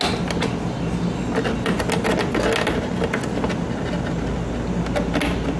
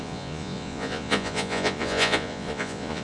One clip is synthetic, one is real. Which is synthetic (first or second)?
second